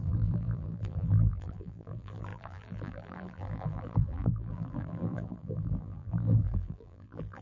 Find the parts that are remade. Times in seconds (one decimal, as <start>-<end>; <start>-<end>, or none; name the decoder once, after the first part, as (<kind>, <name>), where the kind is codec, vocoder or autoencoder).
0.0-7.4 (vocoder, BigVGAN v2)